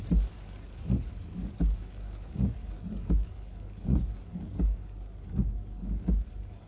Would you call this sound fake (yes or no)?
yes